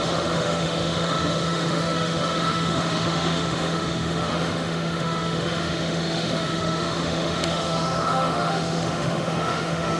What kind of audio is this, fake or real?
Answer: fake